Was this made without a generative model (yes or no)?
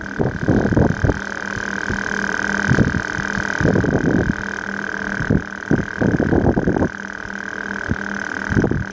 yes